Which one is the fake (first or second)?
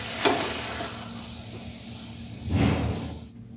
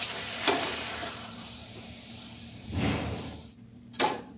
second